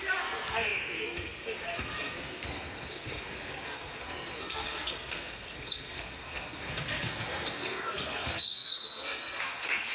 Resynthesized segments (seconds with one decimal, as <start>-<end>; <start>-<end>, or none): 0.0-9.9